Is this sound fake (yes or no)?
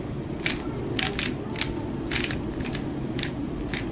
no